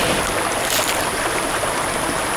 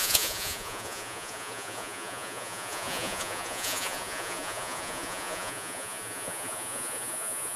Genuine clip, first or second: first